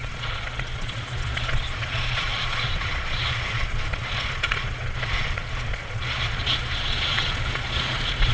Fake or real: fake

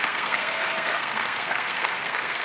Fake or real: fake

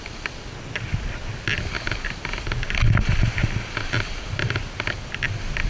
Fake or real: real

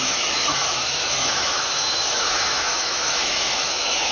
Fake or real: fake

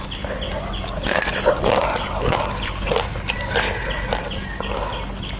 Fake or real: real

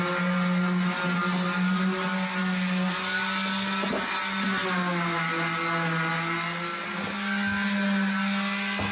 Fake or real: real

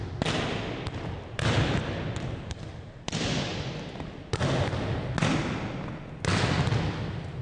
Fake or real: real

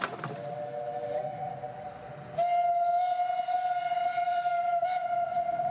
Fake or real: real